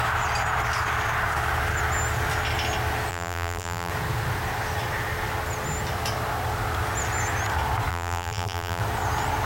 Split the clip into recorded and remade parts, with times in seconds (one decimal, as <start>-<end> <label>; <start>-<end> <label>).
0.0-3.1 recorded; 3.1-3.9 remade; 3.9-7.9 recorded; 7.9-8.8 remade; 8.8-9.4 recorded